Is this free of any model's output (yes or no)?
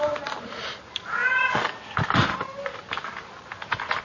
yes